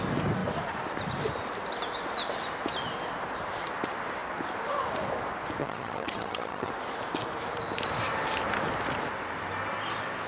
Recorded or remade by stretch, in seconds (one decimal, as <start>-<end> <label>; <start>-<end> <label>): 0.0-5.6 recorded; 5.6-6.7 remade; 6.7-10.3 recorded